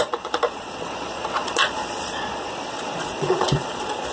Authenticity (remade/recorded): remade